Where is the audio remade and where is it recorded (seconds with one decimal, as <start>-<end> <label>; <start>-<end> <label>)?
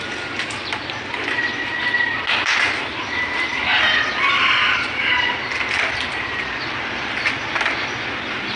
0.0-3.5 recorded; 3.5-7.4 remade; 7.4-8.6 recorded